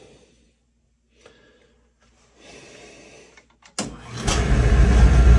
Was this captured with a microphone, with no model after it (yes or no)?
yes